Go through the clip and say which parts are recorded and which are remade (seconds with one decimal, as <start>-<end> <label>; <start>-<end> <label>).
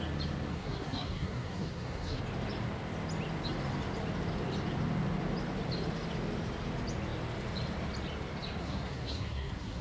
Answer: 0.0-0.5 recorded; 0.5-2.2 remade; 2.2-8.6 recorded; 8.6-9.8 remade